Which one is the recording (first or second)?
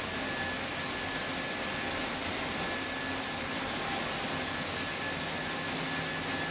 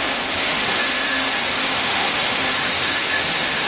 first